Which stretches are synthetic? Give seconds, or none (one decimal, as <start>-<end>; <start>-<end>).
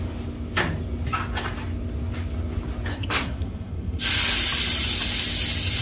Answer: 2.9-4.0